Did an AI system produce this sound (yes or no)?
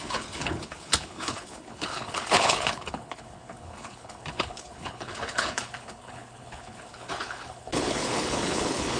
yes